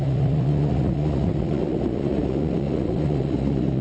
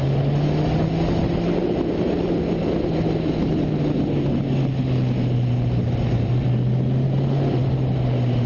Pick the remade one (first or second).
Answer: first